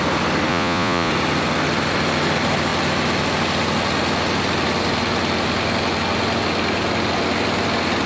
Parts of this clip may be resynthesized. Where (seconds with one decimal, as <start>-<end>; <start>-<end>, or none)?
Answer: 0.5-1.1